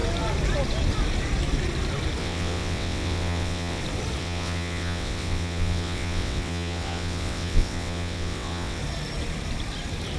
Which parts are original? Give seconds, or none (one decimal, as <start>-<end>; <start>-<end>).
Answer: 0.0-2.2; 3.8-4.2; 8.8-10.2